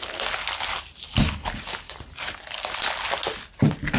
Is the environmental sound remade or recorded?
recorded